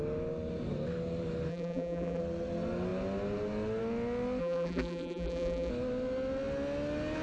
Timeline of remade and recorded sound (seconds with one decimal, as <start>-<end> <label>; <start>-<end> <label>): 0.0-1.5 recorded; 1.5-2.2 remade; 2.2-4.4 recorded; 4.4-5.7 remade; 5.7-7.2 recorded